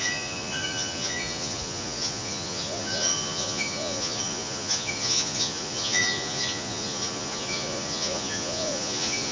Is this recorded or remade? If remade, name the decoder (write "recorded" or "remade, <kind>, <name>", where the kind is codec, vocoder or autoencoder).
remade, vocoder, Vocos